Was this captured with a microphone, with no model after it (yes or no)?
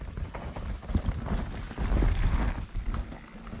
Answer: yes